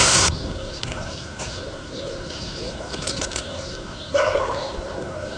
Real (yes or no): no